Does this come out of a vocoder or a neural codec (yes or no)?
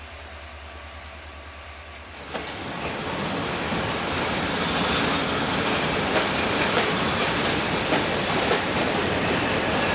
yes